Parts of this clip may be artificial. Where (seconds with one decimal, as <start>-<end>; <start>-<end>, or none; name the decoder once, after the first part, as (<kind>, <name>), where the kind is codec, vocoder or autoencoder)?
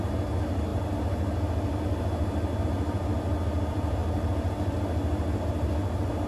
none